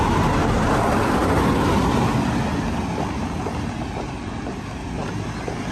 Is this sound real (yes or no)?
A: yes